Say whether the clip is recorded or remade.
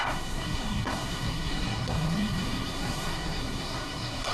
remade